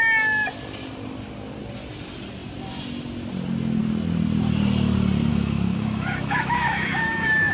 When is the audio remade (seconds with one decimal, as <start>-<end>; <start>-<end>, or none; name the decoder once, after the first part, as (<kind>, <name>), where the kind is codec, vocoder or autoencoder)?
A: 5.3-7.5 (autoencoder, DAC-VAE)